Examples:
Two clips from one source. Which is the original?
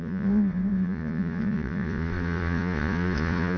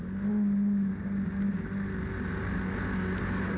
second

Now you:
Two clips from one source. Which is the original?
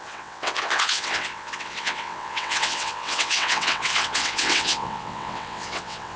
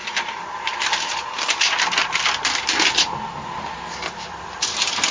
second